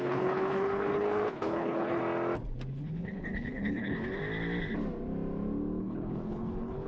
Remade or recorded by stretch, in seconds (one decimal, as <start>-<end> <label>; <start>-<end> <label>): 0.0-2.0 remade; 2.0-2.7 recorded; 2.7-4.2 remade; 4.2-5.8 recorded; 5.8-6.9 remade

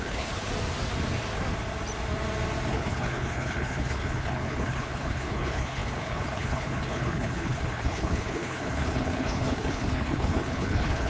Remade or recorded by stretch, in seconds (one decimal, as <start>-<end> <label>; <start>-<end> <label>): 0.0-0.5 remade; 0.5-2.7 recorded; 2.7-11.1 remade

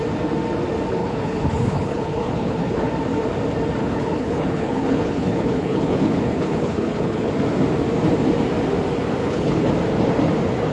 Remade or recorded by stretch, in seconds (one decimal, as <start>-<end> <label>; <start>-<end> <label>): 0.0-1.0 recorded; 1.0-2.9 remade; 2.9-3.8 recorded; 3.8-7.3 remade; 7.3-9.2 recorded; 9.2-9.7 remade; 9.7-10.7 recorded

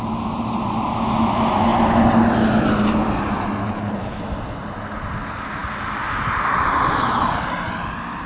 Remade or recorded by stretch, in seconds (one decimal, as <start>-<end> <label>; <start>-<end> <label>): 0.0-3.6 recorded; 3.6-4.2 remade; 4.2-8.3 recorded

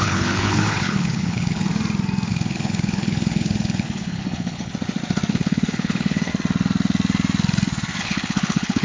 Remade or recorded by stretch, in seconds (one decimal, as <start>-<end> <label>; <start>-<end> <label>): 0.0-1.7 remade; 1.7-2.3 recorded; 2.3-4.7 remade; 4.7-5.3 recorded; 5.3-6.3 remade; 6.3-8.0 recorded; 8.0-8.8 remade

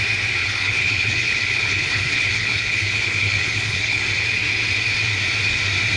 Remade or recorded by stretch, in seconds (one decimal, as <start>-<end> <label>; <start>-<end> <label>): 0.0-0.4 recorded; 0.4-4.0 remade; 4.0-6.0 recorded

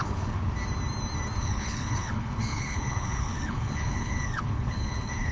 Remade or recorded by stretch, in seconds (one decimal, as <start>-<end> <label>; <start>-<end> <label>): 0.0-0.5 remade; 0.5-1.4 recorded; 1.4-5.3 remade